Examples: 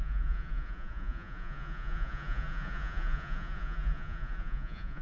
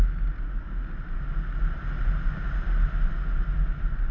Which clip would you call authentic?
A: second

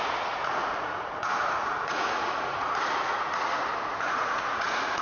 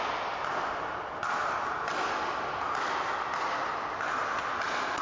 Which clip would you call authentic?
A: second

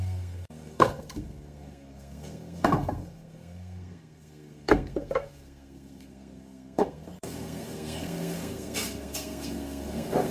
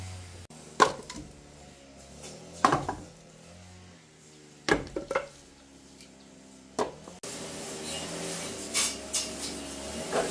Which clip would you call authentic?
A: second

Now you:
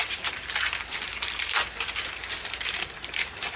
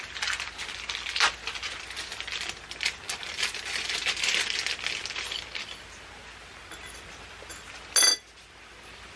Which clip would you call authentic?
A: second